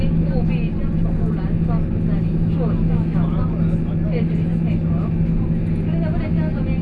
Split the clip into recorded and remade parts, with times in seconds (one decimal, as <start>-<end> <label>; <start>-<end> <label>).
0.0-6.8 recorded